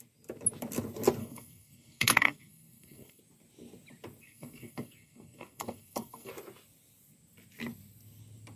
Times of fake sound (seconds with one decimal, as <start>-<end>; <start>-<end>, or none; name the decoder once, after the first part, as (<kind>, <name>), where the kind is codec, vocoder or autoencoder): 1.2-3.2 (codec, SNAC); 4.2-6.3